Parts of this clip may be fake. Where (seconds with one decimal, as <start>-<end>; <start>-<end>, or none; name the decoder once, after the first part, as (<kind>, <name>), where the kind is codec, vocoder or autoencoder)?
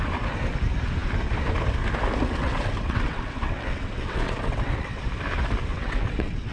2.4-5.0 (vocoder, WaveNeXt); 5.7-6.5